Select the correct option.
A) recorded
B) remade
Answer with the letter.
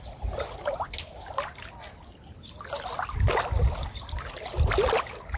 A